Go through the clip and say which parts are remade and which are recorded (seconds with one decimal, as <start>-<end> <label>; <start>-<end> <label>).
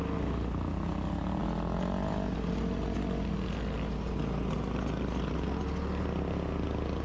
0.0-7.0 recorded